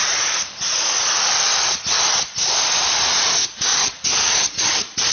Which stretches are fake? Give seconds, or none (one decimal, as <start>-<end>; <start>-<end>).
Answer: 0.0-3.1; 3.7-5.1